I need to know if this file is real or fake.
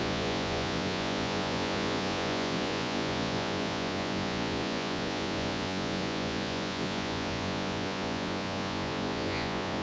fake